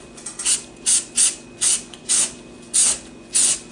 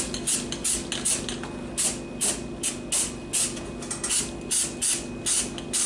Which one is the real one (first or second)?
second